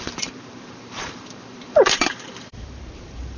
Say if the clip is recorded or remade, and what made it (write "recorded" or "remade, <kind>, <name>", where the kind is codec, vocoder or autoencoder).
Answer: remade, vocoder, BigVGAN v2